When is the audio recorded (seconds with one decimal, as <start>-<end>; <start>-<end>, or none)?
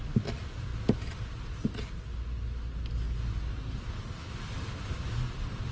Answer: 0.0-5.7